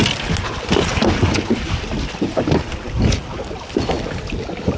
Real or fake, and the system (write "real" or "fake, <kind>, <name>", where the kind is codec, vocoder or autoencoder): real